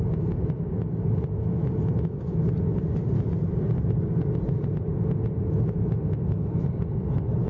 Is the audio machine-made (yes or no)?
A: no